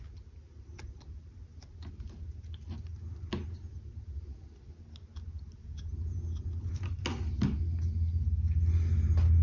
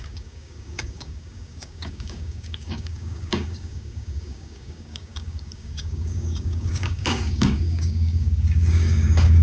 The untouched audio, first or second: first